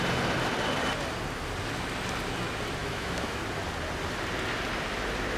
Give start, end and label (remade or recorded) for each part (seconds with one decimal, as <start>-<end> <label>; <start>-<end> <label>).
0.0-2.8 recorded; 2.8-3.4 remade; 3.4-5.4 recorded

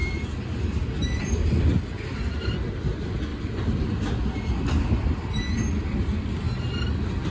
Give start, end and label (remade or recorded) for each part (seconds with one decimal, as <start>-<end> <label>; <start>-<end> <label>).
0.0-7.3 recorded

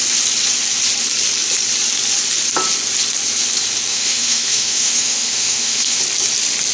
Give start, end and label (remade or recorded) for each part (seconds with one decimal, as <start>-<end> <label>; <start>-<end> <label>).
0.0-3.9 recorded; 3.9-6.0 remade; 6.0-6.7 recorded

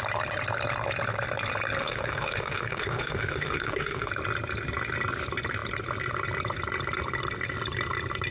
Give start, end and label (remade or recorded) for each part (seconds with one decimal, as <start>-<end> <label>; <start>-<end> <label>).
0.0-1.8 recorded; 1.8-4.1 remade; 4.1-8.3 recorded